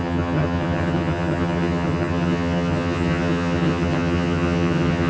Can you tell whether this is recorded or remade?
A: remade